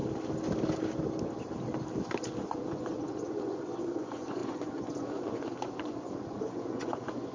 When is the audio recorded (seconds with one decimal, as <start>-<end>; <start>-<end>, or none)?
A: 0.0-2.4